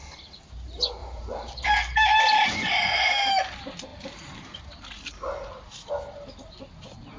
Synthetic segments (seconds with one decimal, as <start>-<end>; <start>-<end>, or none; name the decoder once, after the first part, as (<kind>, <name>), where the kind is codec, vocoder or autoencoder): 1.0-2.2 (vocoder, BigVGAN v2); 3.9-4.6